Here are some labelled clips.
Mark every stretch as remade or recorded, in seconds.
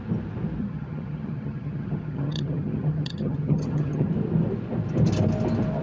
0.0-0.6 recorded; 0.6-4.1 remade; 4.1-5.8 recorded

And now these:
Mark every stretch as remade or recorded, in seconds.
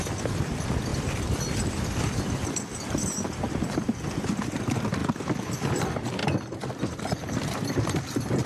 0.0-0.9 recorded; 0.9-4.6 remade; 4.6-5.0 recorded; 5.0-5.5 remade; 5.5-6.2 recorded; 6.2-7.0 remade; 7.0-8.5 recorded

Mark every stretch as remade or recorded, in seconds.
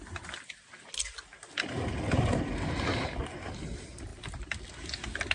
0.0-1.3 recorded; 1.3-2.5 remade; 2.5-4.1 recorded; 4.1-4.7 remade; 4.7-5.3 recorded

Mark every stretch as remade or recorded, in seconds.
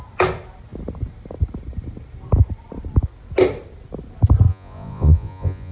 0.0-4.5 recorded; 4.5-5.7 remade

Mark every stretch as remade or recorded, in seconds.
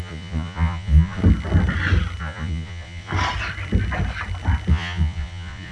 0.0-1.2 remade; 1.2-2.2 recorded; 2.2-3.1 remade; 3.1-4.7 recorded; 4.7-5.7 remade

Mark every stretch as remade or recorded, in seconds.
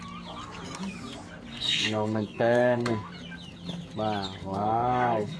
0.0-1.5 recorded; 1.5-3.1 remade; 3.1-4.4 recorded; 4.4-5.4 remade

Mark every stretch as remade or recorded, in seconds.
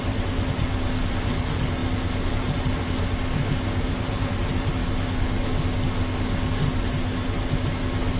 0.0-0.7 remade; 0.7-1.3 recorded; 1.3-1.8 remade; 1.8-2.3 recorded; 2.3-4.8 remade; 4.8-8.2 recorded